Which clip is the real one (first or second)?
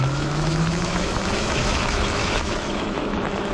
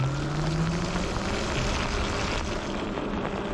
second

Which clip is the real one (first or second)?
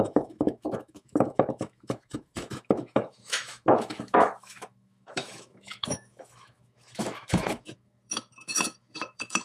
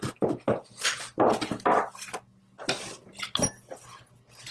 second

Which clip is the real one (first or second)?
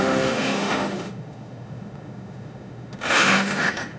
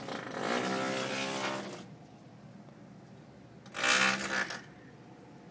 second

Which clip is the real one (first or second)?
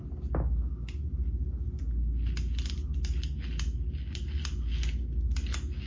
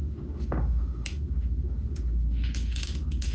first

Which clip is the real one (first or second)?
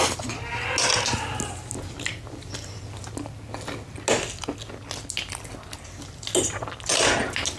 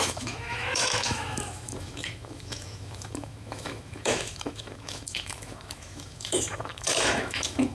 first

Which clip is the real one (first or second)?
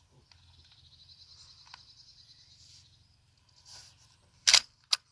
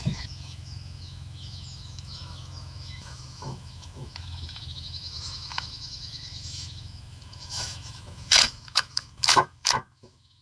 first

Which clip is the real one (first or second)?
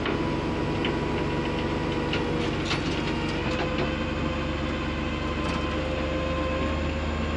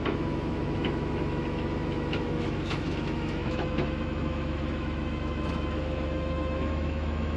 first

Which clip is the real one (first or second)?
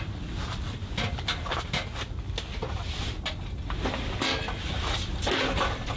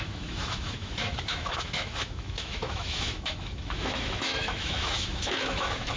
first